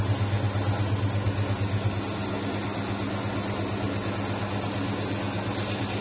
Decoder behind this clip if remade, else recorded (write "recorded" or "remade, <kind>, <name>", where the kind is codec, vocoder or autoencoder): recorded